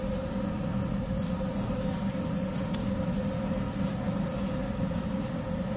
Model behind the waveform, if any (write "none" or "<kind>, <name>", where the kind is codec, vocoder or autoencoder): none